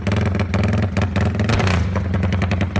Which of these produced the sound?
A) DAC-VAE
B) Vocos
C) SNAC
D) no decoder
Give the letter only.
D